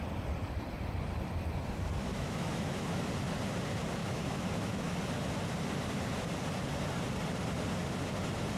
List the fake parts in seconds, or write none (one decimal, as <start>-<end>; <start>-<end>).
2.1-3.1; 4.0-4.9